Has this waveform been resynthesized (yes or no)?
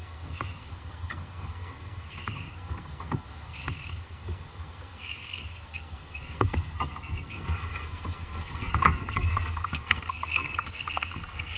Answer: yes